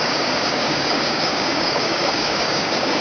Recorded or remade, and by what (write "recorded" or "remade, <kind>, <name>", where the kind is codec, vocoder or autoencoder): remade, codec, DAC